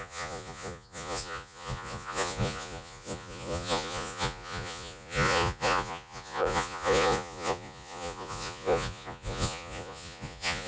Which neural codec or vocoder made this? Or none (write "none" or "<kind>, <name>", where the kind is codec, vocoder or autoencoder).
vocoder, Vocos